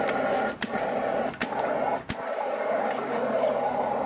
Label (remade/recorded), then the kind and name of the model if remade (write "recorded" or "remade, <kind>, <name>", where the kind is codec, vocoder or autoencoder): recorded